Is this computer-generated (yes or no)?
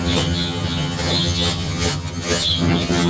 yes